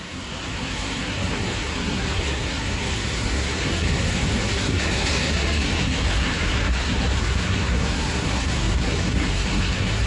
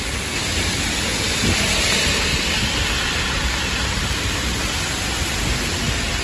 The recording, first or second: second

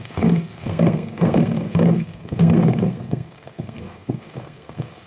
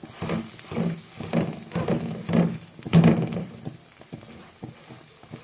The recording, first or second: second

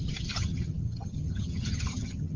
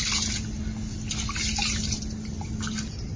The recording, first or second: second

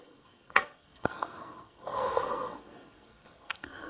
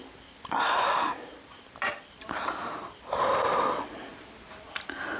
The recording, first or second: second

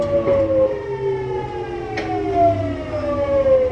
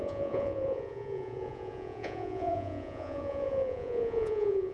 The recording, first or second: first